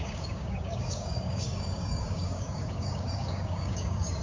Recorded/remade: remade